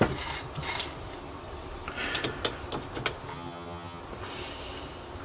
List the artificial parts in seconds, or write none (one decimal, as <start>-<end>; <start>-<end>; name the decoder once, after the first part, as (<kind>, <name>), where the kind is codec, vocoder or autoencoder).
3.3-4.0 (vocoder, HiFi-GAN)